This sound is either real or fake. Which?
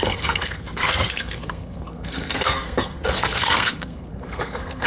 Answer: fake